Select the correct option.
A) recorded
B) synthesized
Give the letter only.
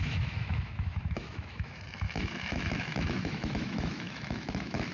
B